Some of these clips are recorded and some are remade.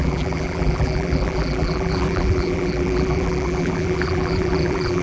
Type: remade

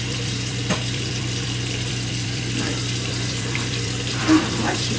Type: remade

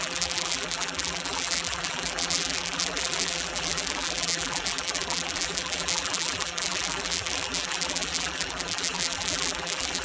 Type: remade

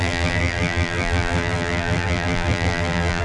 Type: remade